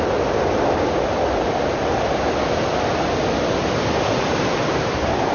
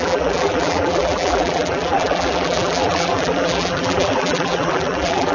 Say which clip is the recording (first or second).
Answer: first